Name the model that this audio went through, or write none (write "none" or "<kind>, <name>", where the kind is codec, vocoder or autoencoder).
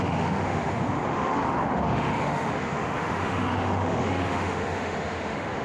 autoencoder, DAC-VAE